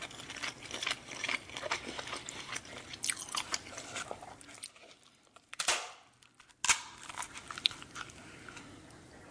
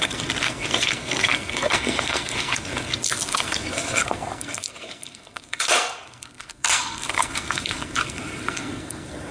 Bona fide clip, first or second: first